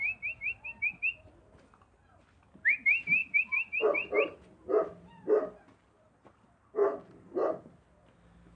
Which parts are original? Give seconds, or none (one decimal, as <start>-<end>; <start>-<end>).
0.0-8.6